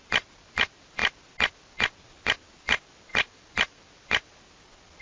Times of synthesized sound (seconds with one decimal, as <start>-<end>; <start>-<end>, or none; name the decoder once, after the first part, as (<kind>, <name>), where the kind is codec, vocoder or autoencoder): none